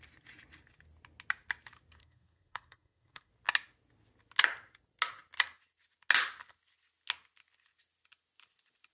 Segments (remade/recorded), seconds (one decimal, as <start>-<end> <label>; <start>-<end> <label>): 0.0-2.0 recorded; 2.0-3.3 remade; 3.3-8.9 recorded